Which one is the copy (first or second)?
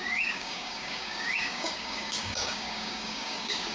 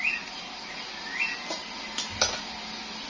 first